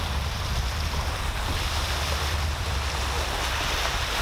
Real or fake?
real